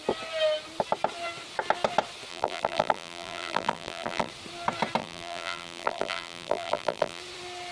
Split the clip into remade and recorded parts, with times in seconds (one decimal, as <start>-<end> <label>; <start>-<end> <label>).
0.0-2.3 recorded; 2.3-4.3 remade; 4.3-5.0 recorded; 5.0-7.2 remade; 7.2-7.7 recorded